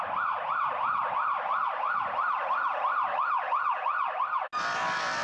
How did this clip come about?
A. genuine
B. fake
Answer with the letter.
A